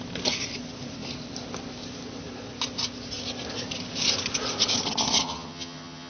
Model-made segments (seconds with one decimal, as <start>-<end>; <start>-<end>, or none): 5.2-6.1